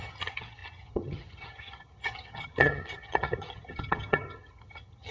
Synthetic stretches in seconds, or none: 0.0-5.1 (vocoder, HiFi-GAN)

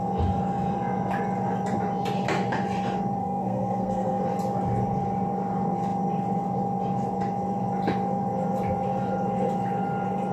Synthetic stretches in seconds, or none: 3.2-4.2 (codec, SNAC)

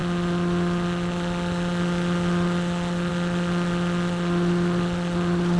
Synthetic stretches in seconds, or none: none

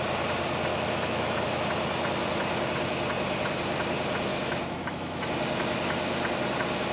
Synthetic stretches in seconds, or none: 0.7-1.6 (autoencoder, DAC-VAE); 4.3-5.3